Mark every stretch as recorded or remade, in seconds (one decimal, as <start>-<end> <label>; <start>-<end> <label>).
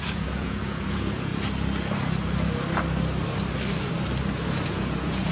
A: 0.0-1.3 remade; 1.3-4.5 recorded; 4.5-5.3 remade